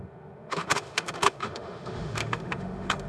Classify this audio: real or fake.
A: fake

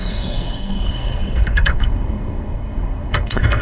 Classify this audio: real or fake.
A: fake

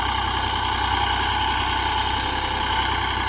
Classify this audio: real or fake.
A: real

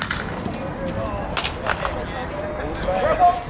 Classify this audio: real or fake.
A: real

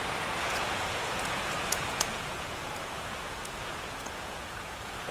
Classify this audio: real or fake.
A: fake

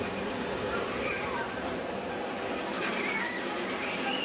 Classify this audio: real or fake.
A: real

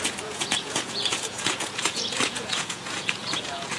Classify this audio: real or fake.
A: fake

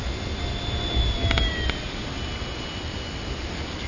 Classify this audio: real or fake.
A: real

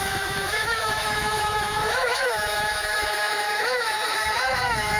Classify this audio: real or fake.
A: fake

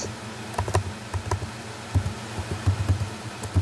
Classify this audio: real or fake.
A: real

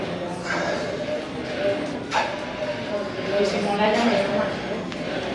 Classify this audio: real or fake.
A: fake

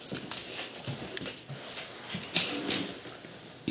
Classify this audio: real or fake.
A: real